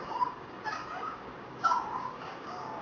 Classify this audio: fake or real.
fake